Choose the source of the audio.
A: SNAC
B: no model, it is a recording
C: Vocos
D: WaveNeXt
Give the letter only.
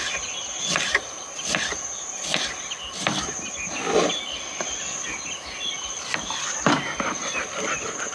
B